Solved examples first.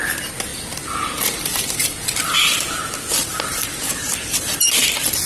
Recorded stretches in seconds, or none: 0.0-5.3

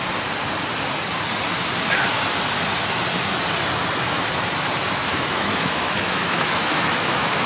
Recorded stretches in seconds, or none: 0.0-5.1

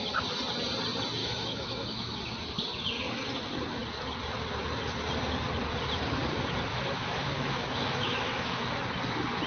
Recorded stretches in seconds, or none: 0.0-1.2; 2.2-6.7; 8.8-9.5

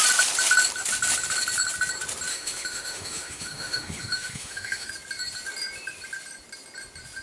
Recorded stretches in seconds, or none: 0.0-2.3; 4.9-7.2

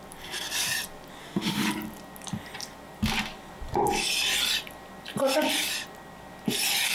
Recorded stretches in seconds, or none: 0.0-1.2; 1.7-6.9

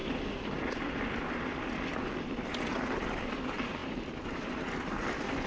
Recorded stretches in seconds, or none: 0.0-5.5